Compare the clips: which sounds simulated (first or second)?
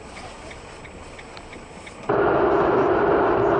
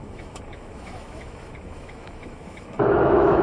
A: second